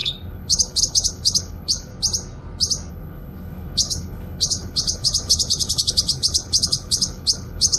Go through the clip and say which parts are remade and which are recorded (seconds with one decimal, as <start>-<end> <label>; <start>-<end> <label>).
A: 0.0-1.9 remade; 1.9-2.9 recorded; 2.9-7.8 remade